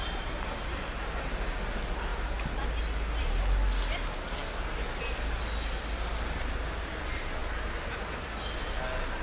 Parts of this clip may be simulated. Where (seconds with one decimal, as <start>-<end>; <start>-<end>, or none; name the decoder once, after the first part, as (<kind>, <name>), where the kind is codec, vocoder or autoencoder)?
none